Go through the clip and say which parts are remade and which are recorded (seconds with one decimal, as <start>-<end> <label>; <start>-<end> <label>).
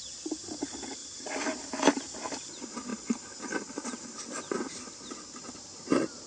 0.0-6.3 recorded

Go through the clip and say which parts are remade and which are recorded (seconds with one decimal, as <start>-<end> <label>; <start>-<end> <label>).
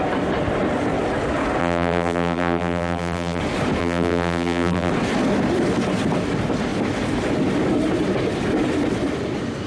0.0-1.6 recorded; 1.6-3.4 remade; 3.4-3.8 recorded; 3.8-4.9 remade; 4.9-9.7 recorded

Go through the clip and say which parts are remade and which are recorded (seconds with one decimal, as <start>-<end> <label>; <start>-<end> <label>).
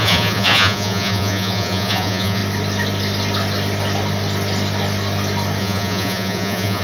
0.0-2.4 remade; 2.4-5.6 recorded; 5.6-6.8 remade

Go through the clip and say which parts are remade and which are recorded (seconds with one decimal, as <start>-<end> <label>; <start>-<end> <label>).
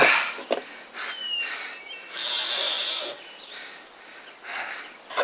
0.0-5.2 recorded